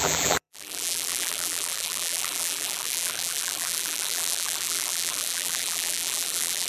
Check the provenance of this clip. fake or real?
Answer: fake